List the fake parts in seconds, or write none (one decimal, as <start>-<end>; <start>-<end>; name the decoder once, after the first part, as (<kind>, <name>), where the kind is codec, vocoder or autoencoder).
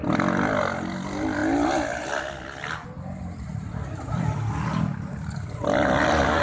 none